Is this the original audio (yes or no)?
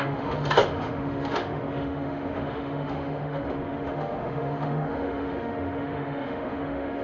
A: no